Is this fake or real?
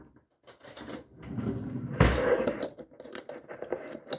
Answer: real